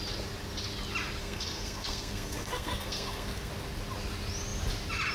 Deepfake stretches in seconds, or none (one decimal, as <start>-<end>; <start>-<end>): 1.2-3.5